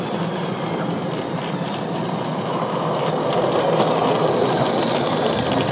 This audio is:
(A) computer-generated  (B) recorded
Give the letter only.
B